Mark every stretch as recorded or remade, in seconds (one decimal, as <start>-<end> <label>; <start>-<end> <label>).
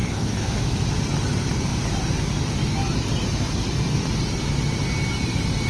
0.0-0.8 remade; 0.8-5.7 recorded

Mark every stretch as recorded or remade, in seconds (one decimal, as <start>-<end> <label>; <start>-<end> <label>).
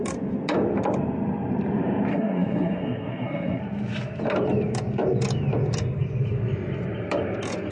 0.0-2.1 recorded; 2.1-3.6 remade; 3.6-7.7 recorded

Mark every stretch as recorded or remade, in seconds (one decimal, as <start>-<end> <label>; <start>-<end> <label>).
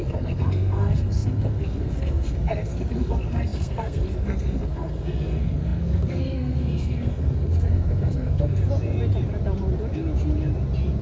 0.0-8.6 remade; 8.6-11.0 recorded